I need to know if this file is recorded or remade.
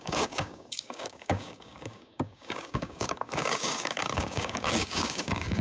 remade